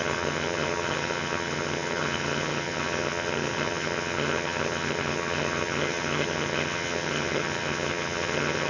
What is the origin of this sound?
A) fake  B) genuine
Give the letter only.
A